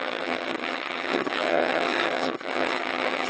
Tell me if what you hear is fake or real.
fake